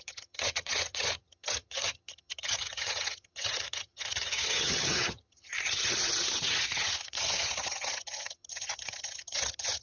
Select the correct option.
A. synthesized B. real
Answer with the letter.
A